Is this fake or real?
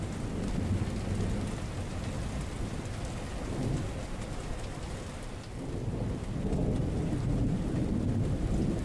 real